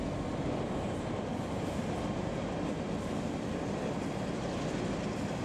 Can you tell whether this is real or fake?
real